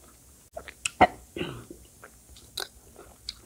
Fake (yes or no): no